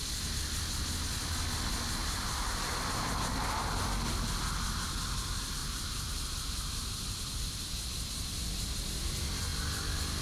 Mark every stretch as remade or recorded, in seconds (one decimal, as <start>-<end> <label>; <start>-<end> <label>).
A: 0.0-2.0 recorded; 2.0-2.8 remade; 2.8-5.6 recorded; 5.6-7.6 remade; 7.6-10.2 recorded